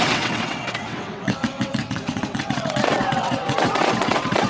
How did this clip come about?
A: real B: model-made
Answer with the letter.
B